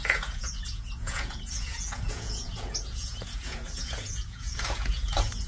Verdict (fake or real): fake